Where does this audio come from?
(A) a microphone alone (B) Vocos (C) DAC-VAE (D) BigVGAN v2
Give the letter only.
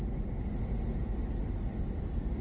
A